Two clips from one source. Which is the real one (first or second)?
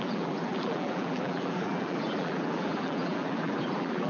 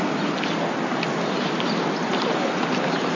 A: second